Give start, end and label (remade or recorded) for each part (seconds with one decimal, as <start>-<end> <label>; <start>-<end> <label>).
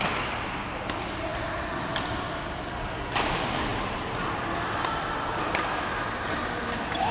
0.0-7.1 recorded